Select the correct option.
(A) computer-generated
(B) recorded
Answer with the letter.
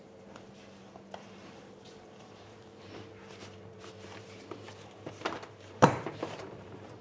A